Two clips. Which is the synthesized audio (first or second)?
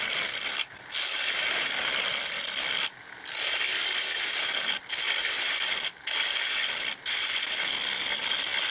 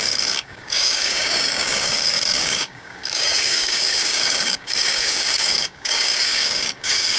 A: second